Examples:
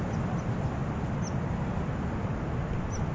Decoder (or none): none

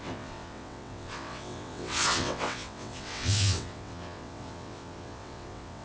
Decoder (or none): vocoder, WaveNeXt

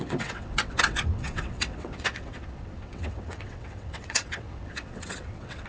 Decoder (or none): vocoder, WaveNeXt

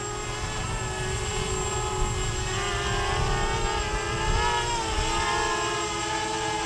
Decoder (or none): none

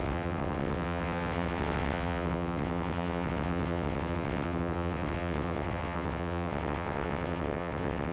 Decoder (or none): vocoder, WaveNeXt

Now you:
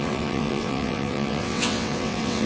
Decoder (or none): vocoder, WaveNeXt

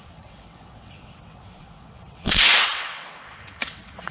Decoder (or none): vocoder, WaveNeXt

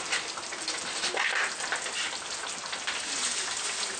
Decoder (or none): none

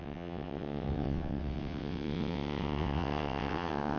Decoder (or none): vocoder, WaveNeXt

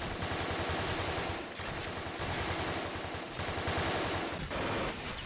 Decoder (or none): none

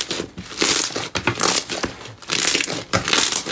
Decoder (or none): none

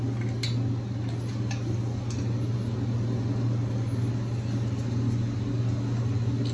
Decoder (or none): none